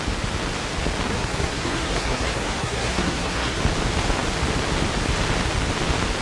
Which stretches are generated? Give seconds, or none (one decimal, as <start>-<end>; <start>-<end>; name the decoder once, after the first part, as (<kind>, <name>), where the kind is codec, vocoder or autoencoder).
1.1-3.6 (codec, SNAC)